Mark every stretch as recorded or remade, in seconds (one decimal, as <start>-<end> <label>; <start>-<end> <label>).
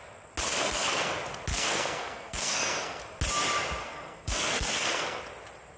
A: 0.0-0.5 recorded; 0.5-1.1 remade; 1.1-1.5 recorded; 1.5-3.0 remade; 3.0-3.8 recorded; 3.8-5.2 remade; 5.2-5.8 recorded